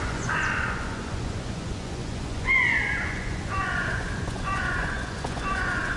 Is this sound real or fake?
fake